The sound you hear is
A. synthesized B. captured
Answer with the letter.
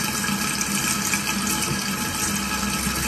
B